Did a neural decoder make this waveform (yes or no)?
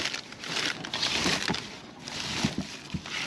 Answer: no